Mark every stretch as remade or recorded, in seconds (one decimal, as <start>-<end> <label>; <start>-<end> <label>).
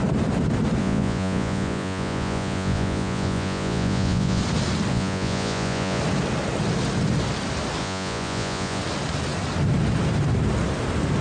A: 0.0-0.8 recorded; 0.8-4.4 remade; 4.4-4.9 recorded; 4.9-6.0 remade; 6.0-7.8 recorded; 7.8-8.8 remade; 8.8-11.2 recorded